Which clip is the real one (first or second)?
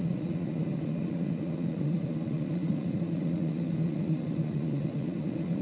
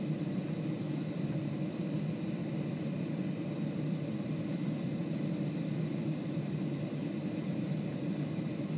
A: second